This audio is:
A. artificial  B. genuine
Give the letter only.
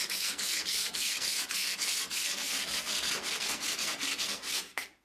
A